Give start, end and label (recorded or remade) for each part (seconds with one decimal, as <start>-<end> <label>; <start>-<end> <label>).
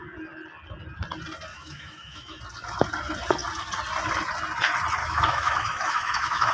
0.0-1.5 recorded; 1.5-2.4 remade; 2.4-5.0 recorded; 5.0-6.5 remade